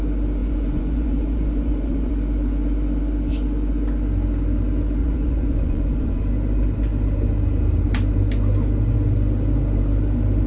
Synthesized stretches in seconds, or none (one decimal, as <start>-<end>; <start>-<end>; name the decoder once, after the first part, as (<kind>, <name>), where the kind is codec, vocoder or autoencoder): 0.4-2.1 (vocoder, Vocos); 5.0-6.2